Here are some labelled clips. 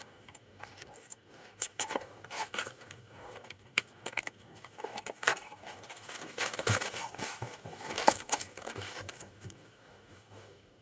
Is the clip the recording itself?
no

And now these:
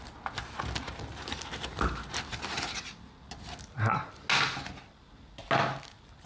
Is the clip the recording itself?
yes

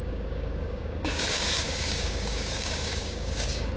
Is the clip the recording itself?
no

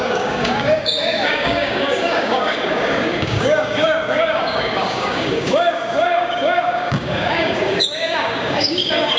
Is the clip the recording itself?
no